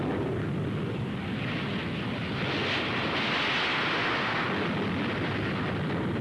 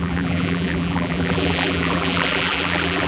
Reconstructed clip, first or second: second